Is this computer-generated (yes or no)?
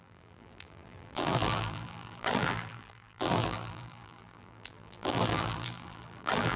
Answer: yes